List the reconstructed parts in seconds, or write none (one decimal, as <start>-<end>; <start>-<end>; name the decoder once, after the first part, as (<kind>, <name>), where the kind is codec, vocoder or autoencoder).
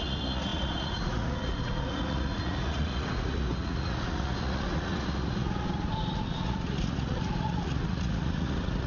0.0-8.9 (vocoder, Vocos)